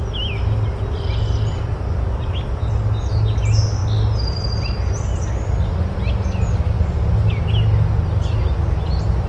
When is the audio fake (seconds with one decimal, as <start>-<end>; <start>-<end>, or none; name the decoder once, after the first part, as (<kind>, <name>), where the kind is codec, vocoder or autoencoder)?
none